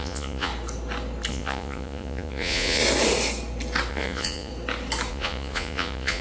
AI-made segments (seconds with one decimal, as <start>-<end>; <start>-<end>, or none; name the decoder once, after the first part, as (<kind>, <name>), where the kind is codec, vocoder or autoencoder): 0.0-0.5 (vocoder, Vocos); 1.3-2.8; 3.9-4.5; 5.1-6.2